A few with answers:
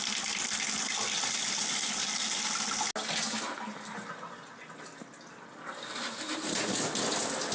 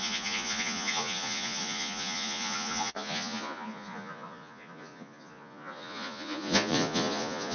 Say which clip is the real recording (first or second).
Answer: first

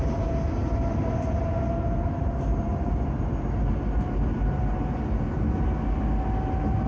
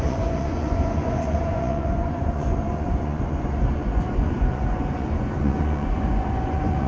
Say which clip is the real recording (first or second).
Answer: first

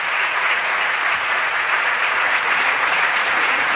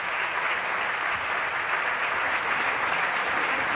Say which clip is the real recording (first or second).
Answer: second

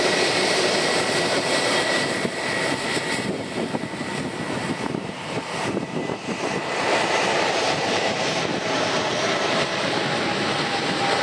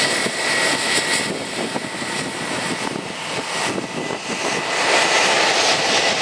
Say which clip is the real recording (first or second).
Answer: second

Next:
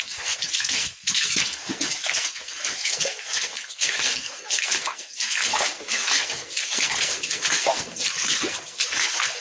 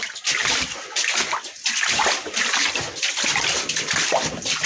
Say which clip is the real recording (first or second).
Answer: second